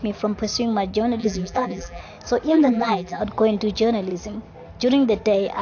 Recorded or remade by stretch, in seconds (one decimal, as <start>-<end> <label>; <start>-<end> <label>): 0.0-1.2 recorded; 1.2-2.0 remade; 2.0-2.5 recorded; 2.5-3.2 remade; 3.2-5.6 recorded